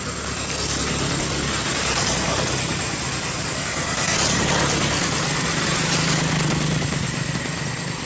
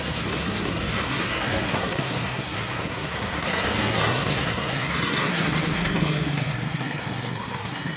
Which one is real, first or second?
first